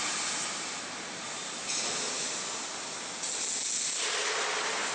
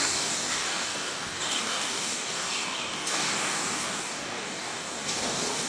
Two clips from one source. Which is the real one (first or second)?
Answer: first